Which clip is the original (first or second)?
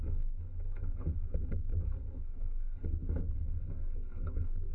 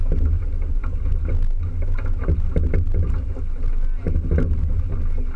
second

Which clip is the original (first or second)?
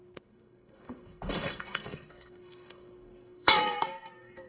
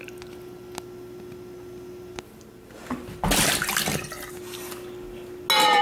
second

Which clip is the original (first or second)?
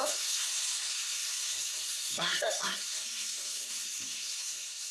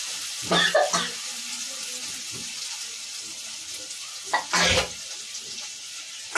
second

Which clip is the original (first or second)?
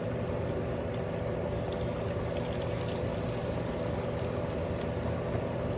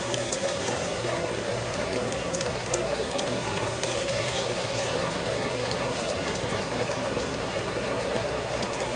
first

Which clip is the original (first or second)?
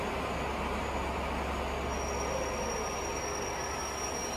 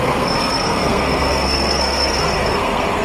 first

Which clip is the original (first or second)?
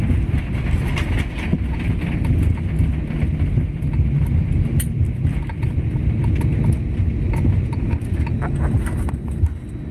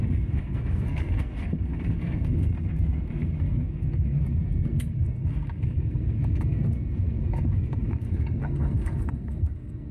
first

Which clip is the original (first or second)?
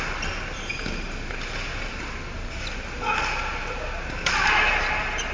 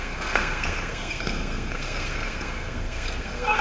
first